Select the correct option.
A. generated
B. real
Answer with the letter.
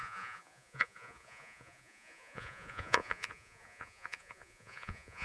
A